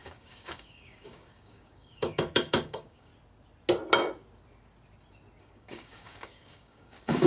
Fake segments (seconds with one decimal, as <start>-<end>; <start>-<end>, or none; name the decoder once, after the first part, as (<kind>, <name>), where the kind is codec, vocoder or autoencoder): 0.0-3.1 (codec, DAC); 5.4-7.3